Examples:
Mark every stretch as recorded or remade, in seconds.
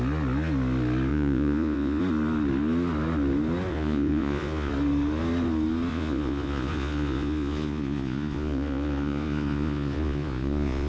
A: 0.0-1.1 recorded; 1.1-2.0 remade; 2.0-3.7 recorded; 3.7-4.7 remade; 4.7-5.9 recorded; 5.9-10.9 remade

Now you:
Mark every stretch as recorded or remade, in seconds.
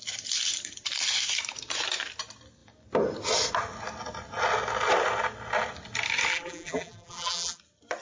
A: 0.0-6.3 recorded; 6.3-7.6 remade; 7.6-8.0 recorded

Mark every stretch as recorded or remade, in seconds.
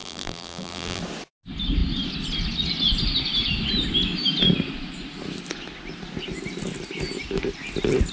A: 0.0-1.0 remade; 1.0-8.1 recorded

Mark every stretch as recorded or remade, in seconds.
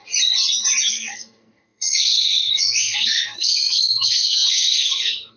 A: 0.0-0.9 recorded; 0.9-5.4 remade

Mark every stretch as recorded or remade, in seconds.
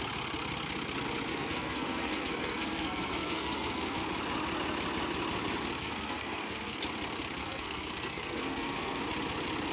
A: 0.0-1.3 recorded; 1.3-4.0 remade; 4.0-5.8 recorded; 5.8-6.8 remade; 6.8-7.4 recorded; 7.4-9.0 remade; 9.0-9.7 recorded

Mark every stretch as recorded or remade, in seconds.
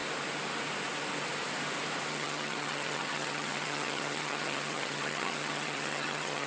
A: 0.0-2.1 recorded; 2.1-6.5 remade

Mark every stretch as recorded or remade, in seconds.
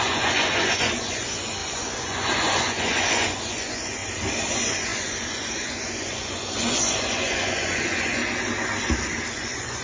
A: 0.0-4.0 remade; 4.0-4.5 recorded; 4.5-8.2 remade; 8.2-9.3 recorded; 9.3-9.8 remade